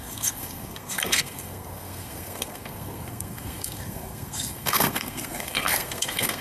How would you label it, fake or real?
fake